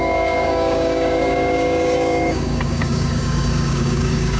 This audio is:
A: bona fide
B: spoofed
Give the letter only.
B